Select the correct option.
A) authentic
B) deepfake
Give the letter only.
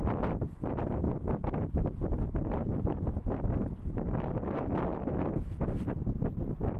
A